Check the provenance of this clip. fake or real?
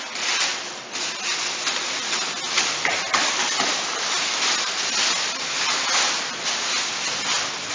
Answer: real